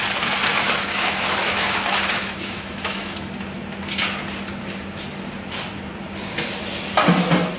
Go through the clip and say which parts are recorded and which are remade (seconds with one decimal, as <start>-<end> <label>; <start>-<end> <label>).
0.0-0.5 recorded; 0.5-3.3 remade; 3.3-7.6 recorded